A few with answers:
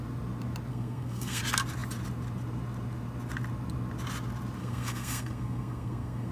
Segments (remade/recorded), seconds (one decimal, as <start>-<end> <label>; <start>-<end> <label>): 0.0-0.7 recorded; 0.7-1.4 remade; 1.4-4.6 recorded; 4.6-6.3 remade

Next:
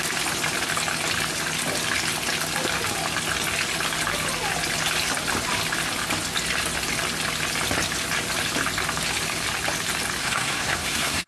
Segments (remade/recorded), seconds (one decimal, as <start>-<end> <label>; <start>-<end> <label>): 0.0-10.2 recorded; 10.2-11.3 remade

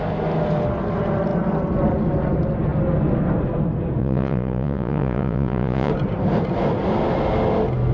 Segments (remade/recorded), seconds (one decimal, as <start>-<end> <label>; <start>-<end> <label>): 0.0-4.0 recorded; 4.0-5.9 remade; 5.9-7.9 recorded

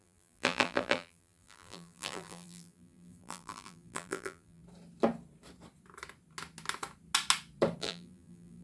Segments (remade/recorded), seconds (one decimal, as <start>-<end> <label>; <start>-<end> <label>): 0.0-4.6 remade; 4.6-7.8 recorded; 7.8-8.6 remade

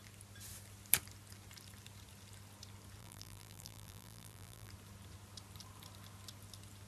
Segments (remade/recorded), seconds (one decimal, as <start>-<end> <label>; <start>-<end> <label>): 0.0-3.0 recorded; 3.0-4.7 remade; 4.7-6.9 recorded